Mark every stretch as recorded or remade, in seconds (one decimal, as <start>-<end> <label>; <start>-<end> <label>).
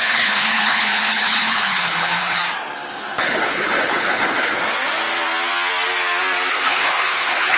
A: 0.0-2.4 remade; 2.4-2.9 recorded; 2.9-4.5 remade; 4.5-6.5 recorded; 6.5-7.6 remade